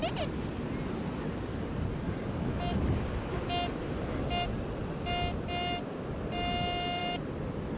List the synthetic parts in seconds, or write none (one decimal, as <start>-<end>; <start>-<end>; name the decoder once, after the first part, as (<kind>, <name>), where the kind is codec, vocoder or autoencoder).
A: none